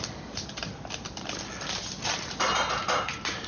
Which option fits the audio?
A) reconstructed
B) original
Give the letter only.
B